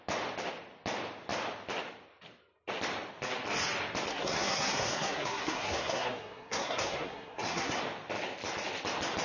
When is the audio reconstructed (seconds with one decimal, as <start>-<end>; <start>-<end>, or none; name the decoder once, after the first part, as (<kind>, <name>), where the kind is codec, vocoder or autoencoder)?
4.1-7.8 (codec, SNAC)